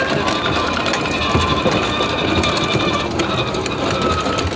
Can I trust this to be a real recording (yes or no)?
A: yes